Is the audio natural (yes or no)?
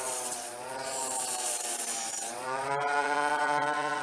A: no